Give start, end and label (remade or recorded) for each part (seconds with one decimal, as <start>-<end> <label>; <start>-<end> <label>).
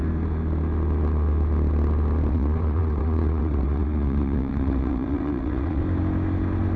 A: 0.0-2.3 recorded; 2.3-5.8 remade; 5.8-6.8 recorded